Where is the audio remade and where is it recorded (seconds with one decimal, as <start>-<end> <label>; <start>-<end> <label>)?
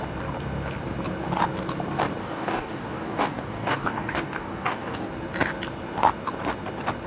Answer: 0.0-2.2 recorded; 2.2-5.1 remade; 5.1-7.1 recorded